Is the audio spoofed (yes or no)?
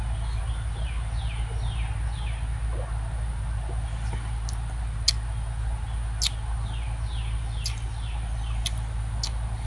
no